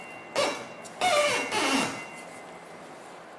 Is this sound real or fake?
real